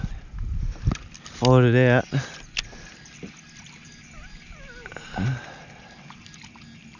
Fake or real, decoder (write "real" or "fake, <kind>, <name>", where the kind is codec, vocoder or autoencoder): real